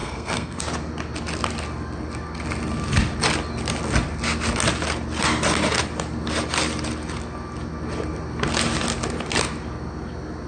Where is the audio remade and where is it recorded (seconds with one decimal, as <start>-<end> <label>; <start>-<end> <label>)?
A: 0.0-0.6 remade; 0.6-10.5 recorded